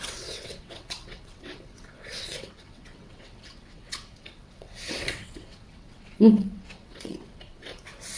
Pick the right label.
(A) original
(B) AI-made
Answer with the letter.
B